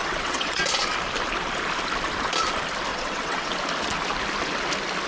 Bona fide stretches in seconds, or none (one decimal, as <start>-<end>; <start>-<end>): 0.6-2.9; 3.5-5.1